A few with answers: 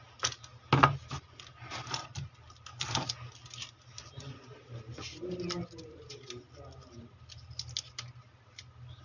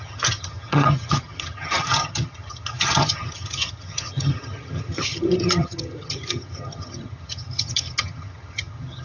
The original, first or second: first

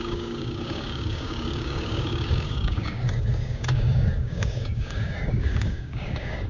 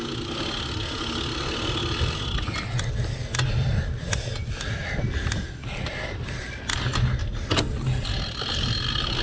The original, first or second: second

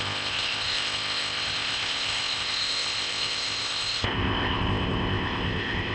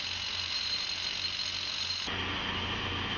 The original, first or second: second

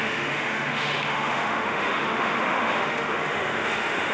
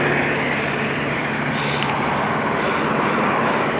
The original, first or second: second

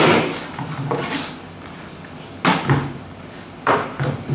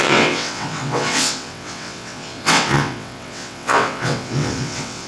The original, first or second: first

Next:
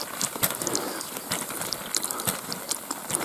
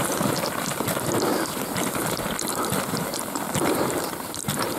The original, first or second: first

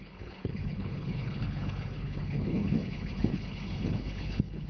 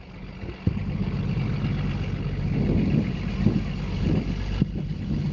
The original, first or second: second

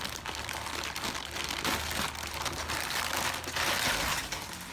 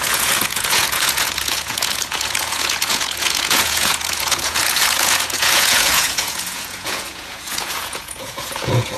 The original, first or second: first